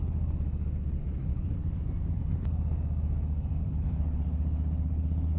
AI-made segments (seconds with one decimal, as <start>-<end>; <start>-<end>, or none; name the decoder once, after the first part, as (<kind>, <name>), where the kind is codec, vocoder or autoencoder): 1.2-1.8 (codec, HILCodec); 3.6-5.4